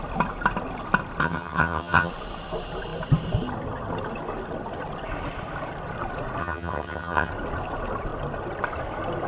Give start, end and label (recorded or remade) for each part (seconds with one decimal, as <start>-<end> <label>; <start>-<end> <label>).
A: 0.0-1.2 recorded; 1.2-2.1 remade; 2.1-6.4 recorded; 6.4-7.3 remade; 7.3-9.3 recorded